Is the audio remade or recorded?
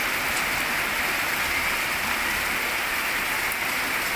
recorded